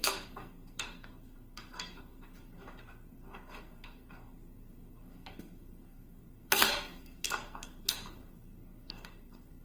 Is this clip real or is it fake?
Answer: fake